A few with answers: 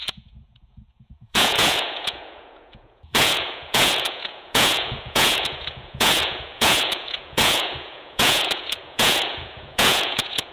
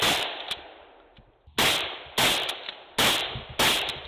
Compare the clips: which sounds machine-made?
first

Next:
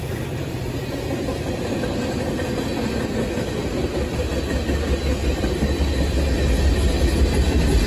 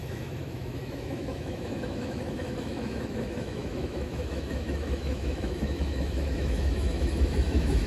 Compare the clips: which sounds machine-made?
second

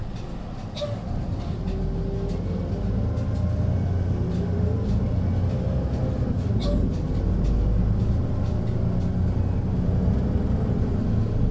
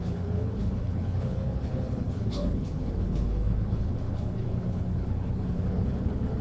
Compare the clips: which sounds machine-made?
second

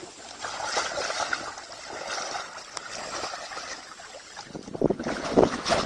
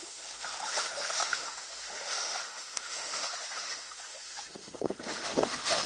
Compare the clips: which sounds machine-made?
second